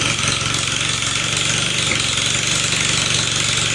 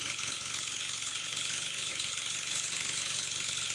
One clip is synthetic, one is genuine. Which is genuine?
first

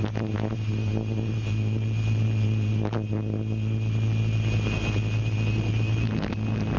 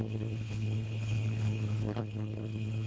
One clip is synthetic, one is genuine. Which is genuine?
first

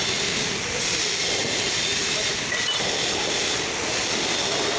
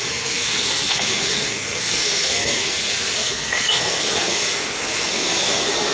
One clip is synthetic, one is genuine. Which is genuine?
first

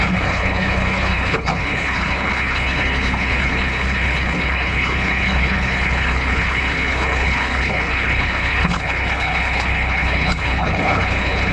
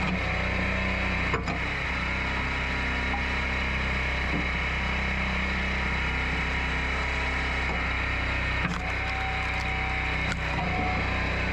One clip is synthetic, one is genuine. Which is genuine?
second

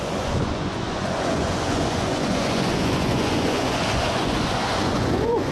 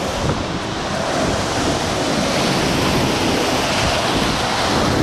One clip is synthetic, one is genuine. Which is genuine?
second